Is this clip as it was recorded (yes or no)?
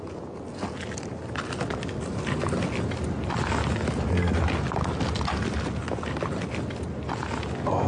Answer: yes